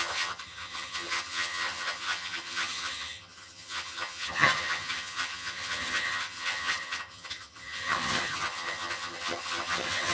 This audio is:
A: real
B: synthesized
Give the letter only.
B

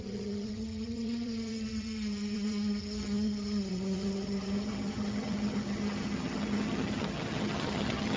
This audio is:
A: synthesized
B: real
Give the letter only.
A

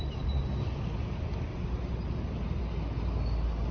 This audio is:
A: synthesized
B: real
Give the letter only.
B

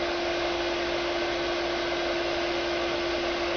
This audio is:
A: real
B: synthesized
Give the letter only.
A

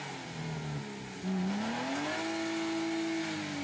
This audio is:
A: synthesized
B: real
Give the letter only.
B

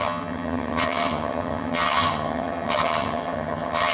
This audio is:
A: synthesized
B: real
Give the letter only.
A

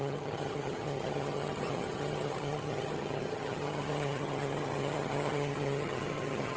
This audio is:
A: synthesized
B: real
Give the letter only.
A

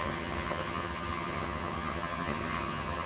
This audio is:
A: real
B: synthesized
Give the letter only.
B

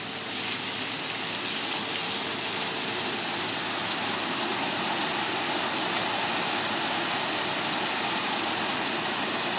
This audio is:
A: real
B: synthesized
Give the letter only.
A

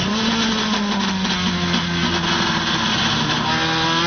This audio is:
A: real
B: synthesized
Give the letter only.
A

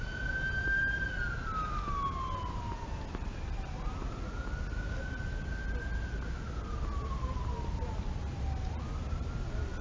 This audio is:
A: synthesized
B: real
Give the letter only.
B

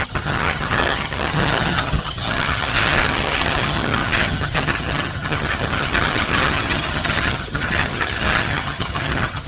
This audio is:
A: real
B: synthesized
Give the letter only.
B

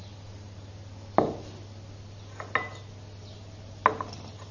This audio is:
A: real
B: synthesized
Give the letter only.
A